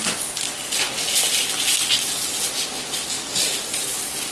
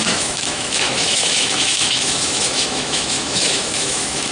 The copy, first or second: second